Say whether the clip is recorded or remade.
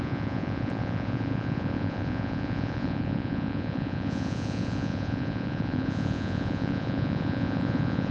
remade